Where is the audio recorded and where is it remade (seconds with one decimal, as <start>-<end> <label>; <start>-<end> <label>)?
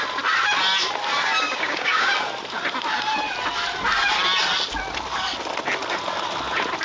0.0-1.4 recorded; 1.4-2.1 remade; 2.1-6.8 recorded